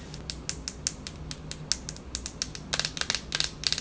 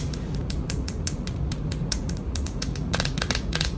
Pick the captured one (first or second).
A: first